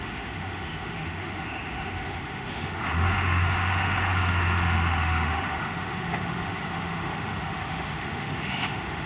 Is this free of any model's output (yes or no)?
no